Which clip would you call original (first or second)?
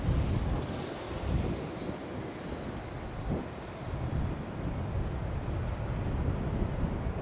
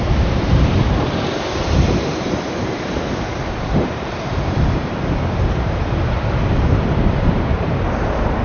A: first